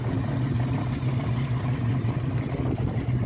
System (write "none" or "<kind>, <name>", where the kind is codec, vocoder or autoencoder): none